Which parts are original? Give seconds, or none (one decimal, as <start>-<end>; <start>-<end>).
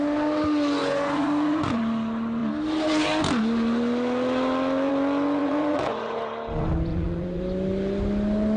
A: 0.0-0.8; 1.8-5.4; 6.2-6.9; 7.4-8.6